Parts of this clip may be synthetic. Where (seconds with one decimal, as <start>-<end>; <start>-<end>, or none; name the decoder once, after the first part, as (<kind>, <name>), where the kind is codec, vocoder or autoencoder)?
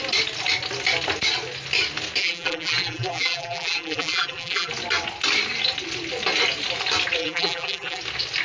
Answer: 2.2-4.7 (vocoder, BigVGAN v2); 7.2-8.0